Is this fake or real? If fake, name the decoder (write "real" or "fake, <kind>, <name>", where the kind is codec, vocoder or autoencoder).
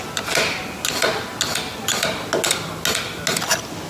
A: real